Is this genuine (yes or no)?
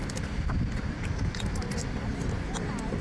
yes